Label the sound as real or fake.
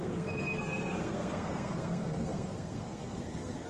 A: fake